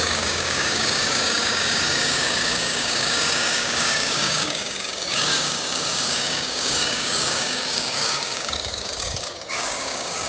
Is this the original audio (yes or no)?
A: no